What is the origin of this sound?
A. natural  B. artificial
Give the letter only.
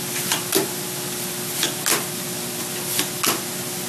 A